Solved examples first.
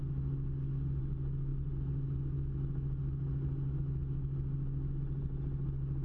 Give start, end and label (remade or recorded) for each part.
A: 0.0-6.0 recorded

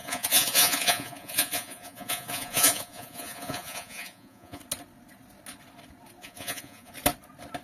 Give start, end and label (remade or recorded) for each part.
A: 0.0-4.6 remade; 4.6-6.2 recorded; 6.2-6.9 remade; 6.9-7.6 recorded

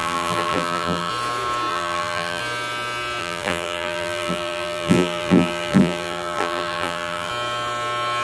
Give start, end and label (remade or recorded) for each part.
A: 0.0-1.1 remade; 1.1-1.7 recorded; 1.7-2.4 remade; 2.4-3.2 recorded; 3.2-7.3 remade; 7.3-8.2 recorded

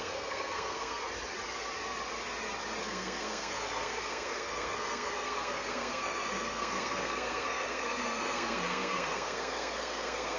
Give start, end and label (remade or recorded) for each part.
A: 0.0-1.0 remade; 1.0-2.8 recorded; 2.8-10.4 remade

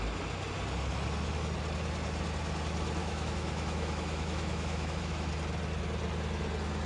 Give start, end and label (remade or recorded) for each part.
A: 0.0-3.0 recorded; 3.0-5.3 remade; 5.3-6.9 recorded

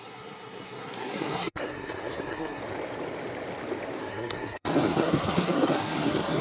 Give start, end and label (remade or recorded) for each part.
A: 0.0-2.6 remade; 2.6-4.0 recorded; 4.0-6.4 remade

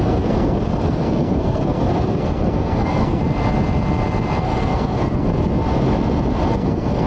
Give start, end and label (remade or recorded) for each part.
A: 0.0-3.2 remade; 3.2-4.4 recorded; 4.4-5.3 remade; 5.3-6.5 recorded; 6.5-7.1 remade